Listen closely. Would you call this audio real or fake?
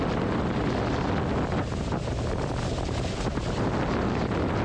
real